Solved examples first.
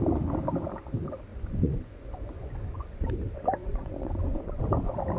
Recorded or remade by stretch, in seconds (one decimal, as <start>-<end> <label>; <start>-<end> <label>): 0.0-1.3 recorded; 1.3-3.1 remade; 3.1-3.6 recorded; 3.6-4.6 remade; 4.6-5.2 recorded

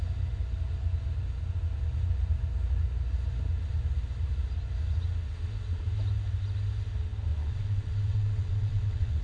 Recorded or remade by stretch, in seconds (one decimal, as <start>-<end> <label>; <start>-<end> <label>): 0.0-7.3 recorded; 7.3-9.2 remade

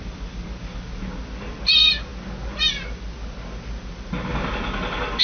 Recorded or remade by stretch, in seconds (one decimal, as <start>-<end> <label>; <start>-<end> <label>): 0.0-5.2 recorded

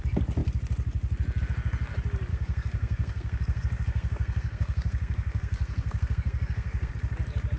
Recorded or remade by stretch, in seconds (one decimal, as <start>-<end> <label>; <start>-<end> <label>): 0.0-2.3 recorded; 2.3-6.9 remade; 6.9-7.6 recorded

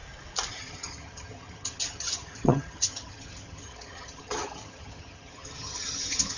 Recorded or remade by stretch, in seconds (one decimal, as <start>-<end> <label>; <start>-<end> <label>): 0.0-0.5 recorded; 0.5-6.4 remade